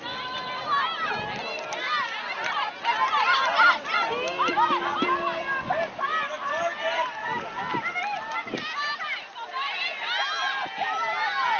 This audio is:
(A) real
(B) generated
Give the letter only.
A